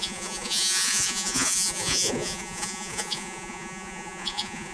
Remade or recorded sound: remade